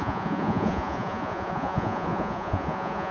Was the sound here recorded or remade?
remade